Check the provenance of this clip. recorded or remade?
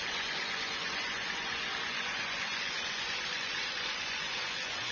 remade